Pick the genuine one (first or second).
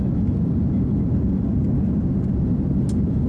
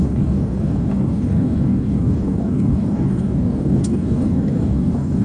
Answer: first